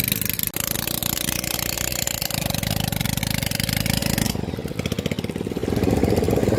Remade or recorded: recorded